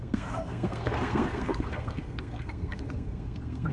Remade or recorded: remade